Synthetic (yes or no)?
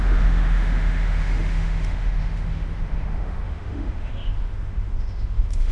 yes